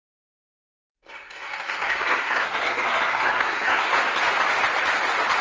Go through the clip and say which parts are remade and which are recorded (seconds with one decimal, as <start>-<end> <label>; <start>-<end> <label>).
0.0-0.7 recorded; 0.7-3.9 remade; 3.9-5.4 recorded